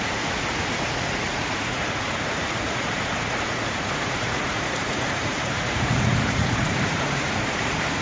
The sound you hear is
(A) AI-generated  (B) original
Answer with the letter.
A